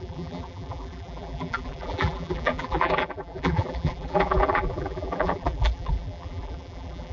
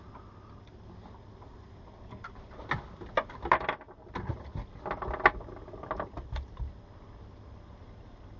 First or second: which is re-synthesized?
first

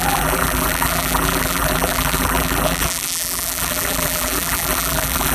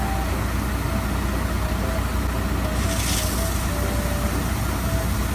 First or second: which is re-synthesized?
first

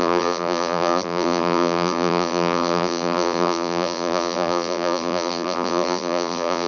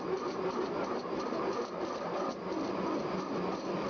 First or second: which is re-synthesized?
first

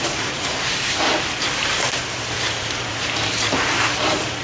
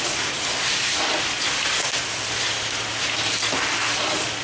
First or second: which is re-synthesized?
first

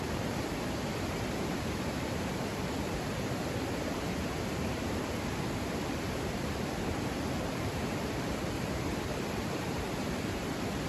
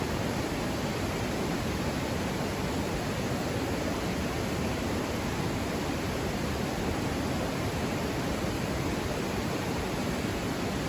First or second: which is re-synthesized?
first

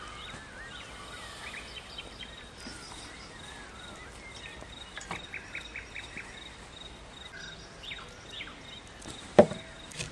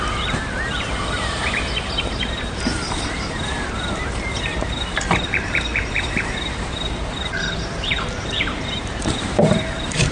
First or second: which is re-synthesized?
second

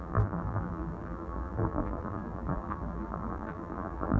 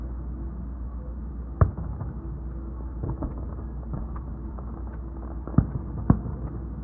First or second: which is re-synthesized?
first